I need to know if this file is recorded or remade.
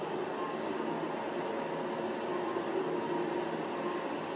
recorded